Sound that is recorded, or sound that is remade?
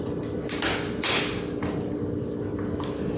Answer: recorded